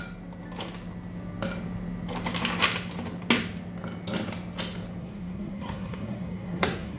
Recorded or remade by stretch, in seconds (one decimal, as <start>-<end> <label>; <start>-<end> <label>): 0.0-5.0 recorded; 5.0-7.0 remade